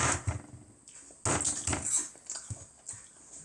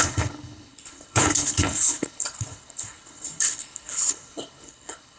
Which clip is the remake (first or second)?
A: second